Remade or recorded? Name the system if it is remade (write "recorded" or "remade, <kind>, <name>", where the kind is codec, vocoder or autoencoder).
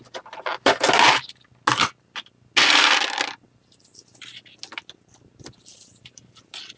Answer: recorded